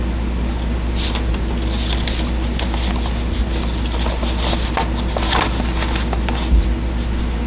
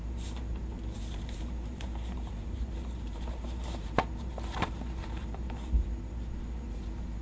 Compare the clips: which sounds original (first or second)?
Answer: first